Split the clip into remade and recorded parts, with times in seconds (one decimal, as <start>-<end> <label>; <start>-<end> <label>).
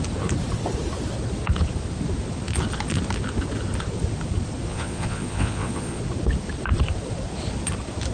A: 0.0-4.7 recorded; 4.7-6.0 remade; 6.0-8.1 recorded